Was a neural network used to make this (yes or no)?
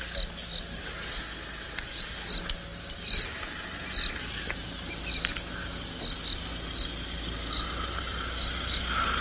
no